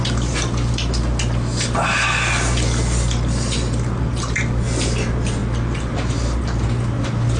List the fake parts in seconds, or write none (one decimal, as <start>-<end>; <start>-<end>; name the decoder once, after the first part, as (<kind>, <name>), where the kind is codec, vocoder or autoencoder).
none